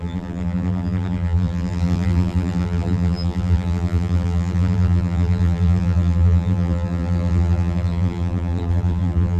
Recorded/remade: remade